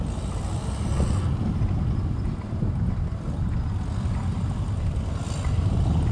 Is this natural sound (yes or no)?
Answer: yes